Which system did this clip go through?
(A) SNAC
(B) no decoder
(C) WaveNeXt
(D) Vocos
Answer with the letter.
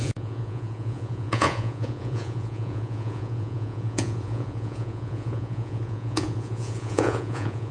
D